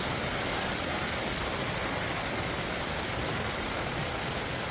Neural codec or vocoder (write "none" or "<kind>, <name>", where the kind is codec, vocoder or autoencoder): none